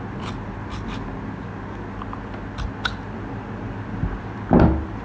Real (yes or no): yes